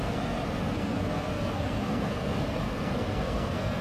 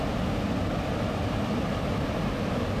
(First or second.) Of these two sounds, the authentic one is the second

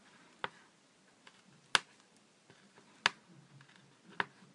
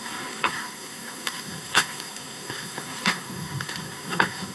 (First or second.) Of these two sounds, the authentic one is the first